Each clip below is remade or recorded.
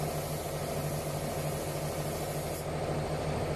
recorded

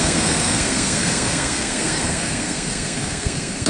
remade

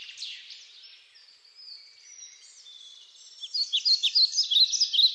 recorded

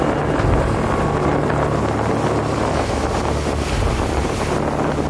recorded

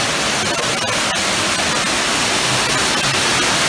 recorded